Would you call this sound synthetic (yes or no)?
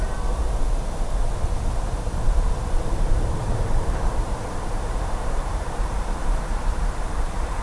yes